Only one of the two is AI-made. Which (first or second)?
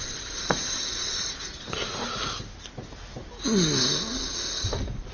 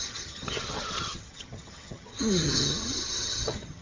second